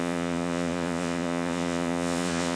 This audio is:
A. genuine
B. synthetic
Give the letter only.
B